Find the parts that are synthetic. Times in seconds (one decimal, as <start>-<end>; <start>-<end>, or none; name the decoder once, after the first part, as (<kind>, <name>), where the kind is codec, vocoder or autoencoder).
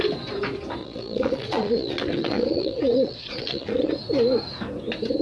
0.8-3.9 (vocoder, Vocos)